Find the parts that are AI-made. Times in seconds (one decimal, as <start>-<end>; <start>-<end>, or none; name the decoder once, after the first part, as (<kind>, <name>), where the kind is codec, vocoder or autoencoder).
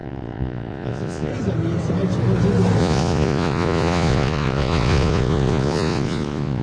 0.0-1.3 (vocoder, Vocos); 2.8-6.6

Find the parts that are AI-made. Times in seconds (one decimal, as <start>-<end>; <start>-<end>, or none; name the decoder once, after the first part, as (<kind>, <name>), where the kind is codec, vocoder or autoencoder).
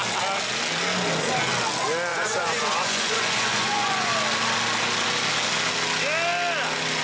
2.1-4.1 (vocoder, Vocos)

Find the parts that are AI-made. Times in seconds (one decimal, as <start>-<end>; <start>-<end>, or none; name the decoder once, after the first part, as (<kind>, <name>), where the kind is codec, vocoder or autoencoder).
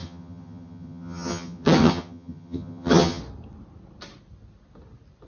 0.0-3.2 (vocoder, HiFi-GAN)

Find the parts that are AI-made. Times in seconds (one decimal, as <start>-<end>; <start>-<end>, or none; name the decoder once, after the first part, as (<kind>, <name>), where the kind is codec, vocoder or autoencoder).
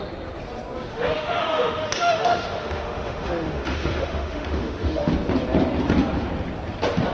0.9-5.1 (autoencoder, DAC-VAE)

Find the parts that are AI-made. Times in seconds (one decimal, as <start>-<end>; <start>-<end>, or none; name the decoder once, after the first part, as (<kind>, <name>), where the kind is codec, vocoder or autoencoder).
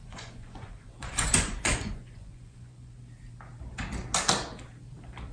0.0-2.9 (vocoder, Vocos)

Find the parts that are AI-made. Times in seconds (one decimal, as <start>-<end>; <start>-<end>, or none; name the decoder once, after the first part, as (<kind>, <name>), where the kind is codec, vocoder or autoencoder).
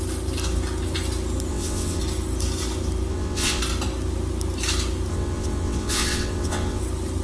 1.5-2.0 (vocoder, WaveNeXt); 3.1-3.6; 5.1-6.8